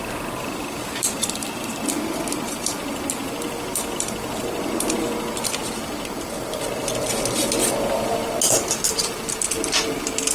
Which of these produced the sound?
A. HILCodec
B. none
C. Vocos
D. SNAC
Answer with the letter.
B